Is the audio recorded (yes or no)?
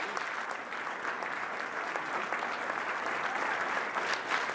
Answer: yes